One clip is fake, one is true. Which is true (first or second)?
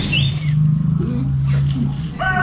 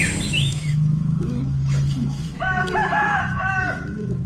first